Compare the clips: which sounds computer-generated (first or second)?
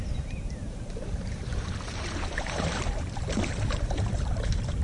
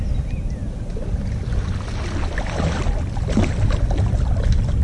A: first